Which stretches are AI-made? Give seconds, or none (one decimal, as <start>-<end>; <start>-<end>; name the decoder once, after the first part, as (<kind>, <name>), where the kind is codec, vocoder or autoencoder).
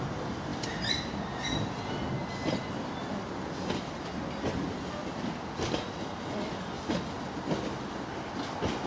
none